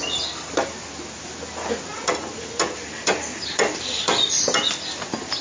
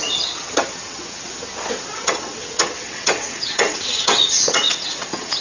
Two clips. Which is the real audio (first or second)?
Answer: first